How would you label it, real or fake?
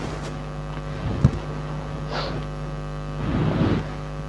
real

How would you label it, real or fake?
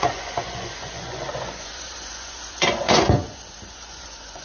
fake